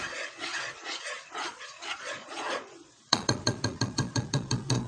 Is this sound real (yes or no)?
no